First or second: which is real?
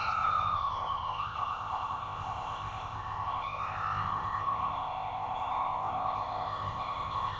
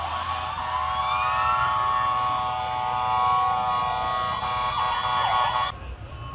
second